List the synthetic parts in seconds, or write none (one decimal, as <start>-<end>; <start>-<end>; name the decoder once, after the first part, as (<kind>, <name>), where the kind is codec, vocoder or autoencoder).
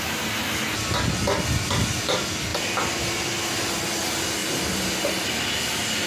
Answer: none